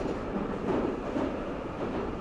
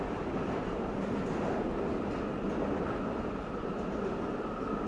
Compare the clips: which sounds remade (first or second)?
first